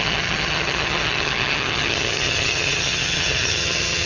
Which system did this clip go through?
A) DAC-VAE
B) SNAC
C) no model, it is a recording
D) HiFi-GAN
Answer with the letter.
D